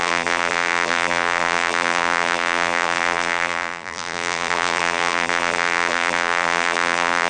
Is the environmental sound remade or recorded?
remade